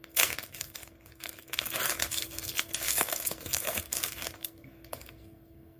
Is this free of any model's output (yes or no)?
no